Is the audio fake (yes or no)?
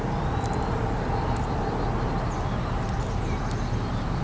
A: no